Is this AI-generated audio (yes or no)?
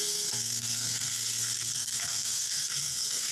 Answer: yes